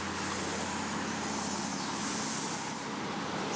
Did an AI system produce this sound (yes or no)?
no